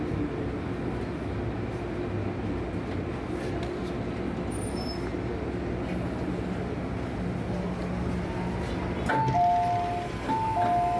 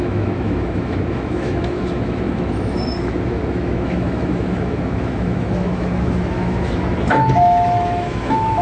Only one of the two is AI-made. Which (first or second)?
second